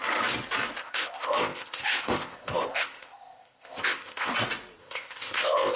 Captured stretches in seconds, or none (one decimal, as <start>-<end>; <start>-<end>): 0.0-0.8; 4.3-4.8